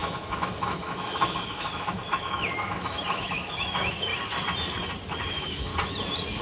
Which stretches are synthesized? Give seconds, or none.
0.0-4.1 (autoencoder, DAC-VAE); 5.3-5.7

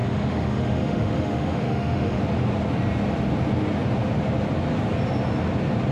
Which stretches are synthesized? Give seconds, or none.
0.0-2.2 (autoencoder, DAC-VAE)

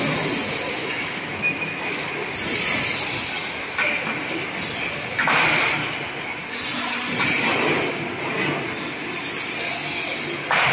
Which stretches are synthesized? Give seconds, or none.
0.8-2.1 (autoencoder, DAC-VAE)

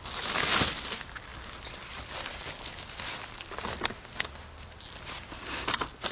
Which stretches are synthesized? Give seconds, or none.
3.9-4.8 (autoencoder, DAC-VAE)

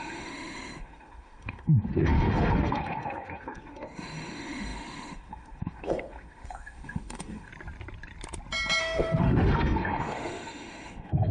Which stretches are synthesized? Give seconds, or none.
0.0-7.5 (autoencoder, DAC-VAE); 8.8-11.3

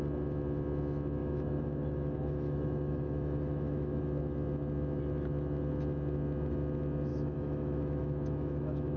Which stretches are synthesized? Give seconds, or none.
1.2-4.0 (autoencoder, DAC-VAE); 7.1-9.0

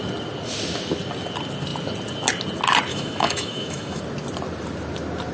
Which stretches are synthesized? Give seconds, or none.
2.9-4.0 (autoencoder, DAC-VAE)

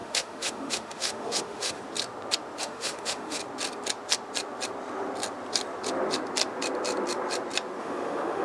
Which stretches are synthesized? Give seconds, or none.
0.0-1.8 (autoencoder, DAC-VAE); 2.6-3.4; 7.8-8.4